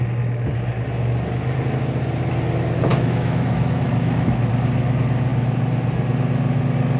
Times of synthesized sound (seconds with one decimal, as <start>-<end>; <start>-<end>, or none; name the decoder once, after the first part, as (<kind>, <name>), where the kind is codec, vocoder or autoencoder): 2.9-4.5 (autoencoder, DAC-VAE)